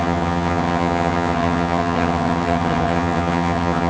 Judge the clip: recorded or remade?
remade